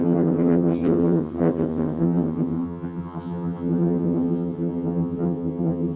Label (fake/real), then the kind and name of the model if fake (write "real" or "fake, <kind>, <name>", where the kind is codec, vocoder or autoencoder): fake, vocoder, HiFi-GAN